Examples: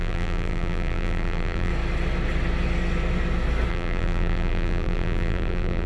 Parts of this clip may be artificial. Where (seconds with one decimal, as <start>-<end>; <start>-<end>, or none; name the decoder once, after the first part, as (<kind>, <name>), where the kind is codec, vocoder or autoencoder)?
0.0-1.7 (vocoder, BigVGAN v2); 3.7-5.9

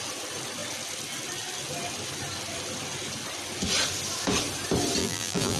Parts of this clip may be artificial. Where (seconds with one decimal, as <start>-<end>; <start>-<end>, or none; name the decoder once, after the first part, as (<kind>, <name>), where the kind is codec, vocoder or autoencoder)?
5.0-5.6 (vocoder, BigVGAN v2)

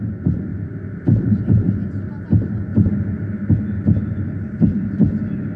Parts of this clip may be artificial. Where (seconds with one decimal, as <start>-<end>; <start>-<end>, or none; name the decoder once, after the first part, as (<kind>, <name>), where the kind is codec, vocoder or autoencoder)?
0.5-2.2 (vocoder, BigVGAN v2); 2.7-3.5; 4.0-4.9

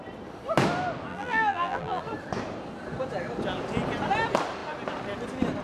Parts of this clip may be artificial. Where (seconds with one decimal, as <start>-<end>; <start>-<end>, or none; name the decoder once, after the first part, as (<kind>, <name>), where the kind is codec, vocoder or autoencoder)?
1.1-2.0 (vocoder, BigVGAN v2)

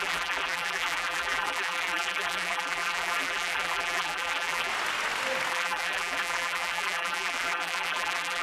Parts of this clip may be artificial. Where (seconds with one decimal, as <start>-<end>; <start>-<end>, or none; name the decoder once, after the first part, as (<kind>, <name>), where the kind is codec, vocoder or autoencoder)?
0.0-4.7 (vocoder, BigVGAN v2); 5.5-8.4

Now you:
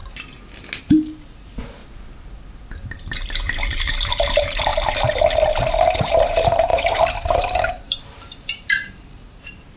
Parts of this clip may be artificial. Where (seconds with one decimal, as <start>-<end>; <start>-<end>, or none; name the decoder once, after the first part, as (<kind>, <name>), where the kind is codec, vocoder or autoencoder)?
0.8-1.8 (vocoder, BigVGAN v2); 3.8-4.7; 6.0-9.8

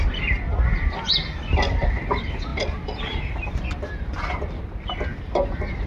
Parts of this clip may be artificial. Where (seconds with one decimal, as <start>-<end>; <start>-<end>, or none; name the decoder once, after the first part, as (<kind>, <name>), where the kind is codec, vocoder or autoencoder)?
none

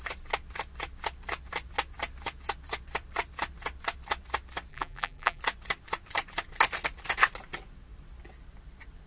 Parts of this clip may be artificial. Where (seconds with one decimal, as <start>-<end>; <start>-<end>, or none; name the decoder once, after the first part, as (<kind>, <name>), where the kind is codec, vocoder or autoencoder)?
4.7-5.4 (vocoder, BigVGAN v2)